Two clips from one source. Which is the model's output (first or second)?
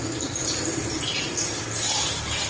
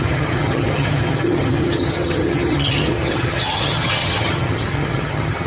second